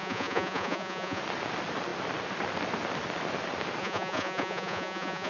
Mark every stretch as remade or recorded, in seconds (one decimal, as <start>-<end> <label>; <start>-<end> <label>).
0.0-1.2 remade; 1.2-3.8 recorded; 3.8-5.3 remade